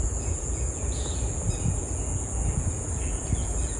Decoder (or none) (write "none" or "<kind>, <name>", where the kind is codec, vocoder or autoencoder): vocoder, Vocos